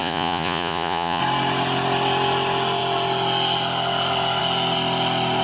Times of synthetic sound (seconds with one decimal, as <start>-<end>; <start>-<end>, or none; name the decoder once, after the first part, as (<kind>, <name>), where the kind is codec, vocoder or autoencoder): 0.0-1.2 (vocoder, Vocos)